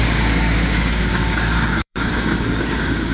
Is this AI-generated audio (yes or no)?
yes